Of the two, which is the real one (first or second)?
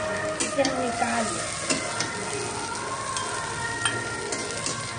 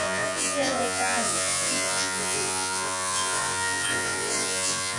first